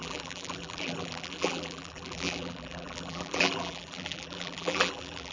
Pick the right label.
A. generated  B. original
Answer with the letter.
A